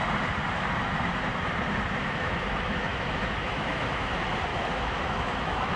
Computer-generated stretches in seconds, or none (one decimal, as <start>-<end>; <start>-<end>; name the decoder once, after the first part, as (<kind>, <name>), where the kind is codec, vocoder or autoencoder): 2.0-4.1 (autoencoder, DAC-VAE); 4.5-5.8

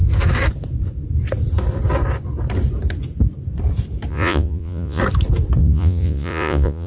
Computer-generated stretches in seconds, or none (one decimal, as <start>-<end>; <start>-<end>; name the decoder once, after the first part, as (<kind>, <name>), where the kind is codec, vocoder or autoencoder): 4.1-5.0 (vocoder, Vocos); 5.6-6.9

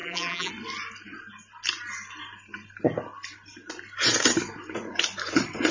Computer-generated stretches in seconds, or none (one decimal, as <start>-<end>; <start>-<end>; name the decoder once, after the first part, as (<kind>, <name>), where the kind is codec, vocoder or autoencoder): 0.0-0.5 (vocoder, BigVGAN v2)